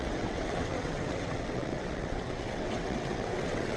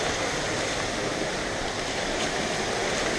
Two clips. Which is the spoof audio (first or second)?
first